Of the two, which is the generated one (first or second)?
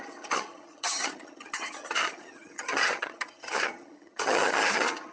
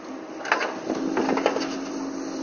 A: first